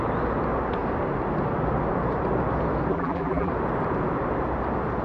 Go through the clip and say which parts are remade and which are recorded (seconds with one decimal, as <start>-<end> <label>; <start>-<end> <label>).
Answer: 0.0-2.9 recorded; 2.9-3.5 remade; 3.5-5.0 recorded

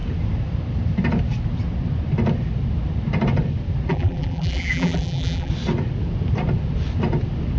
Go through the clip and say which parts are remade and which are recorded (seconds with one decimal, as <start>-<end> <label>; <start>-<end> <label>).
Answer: 0.0-3.9 recorded; 3.9-5.5 remade; 5.5-7.6 recorded